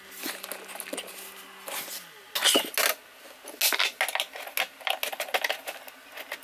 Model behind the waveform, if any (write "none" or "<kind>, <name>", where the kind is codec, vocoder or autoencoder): none